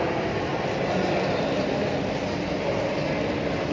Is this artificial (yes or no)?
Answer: no